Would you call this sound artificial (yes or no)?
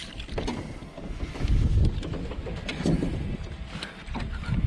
no